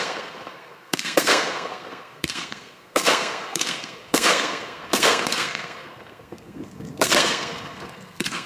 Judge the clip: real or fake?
fake